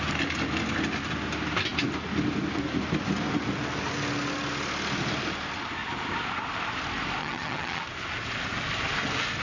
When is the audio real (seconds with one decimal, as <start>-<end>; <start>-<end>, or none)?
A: 0.0-7.2; 7.8-9.4